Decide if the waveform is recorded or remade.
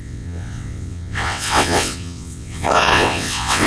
remade